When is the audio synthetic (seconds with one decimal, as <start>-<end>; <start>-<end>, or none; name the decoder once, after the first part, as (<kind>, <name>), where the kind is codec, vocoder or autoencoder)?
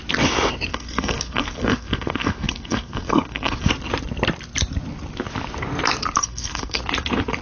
0.7-3.7 (codec, SNAC); 6.2-6.8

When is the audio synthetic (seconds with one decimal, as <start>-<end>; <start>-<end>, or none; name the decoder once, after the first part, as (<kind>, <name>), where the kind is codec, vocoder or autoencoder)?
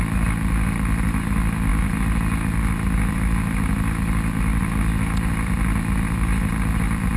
none